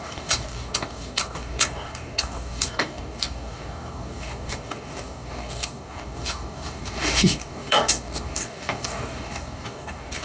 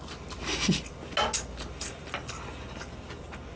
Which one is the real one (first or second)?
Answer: second